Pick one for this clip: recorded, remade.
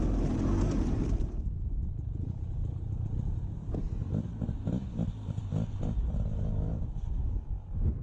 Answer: recorded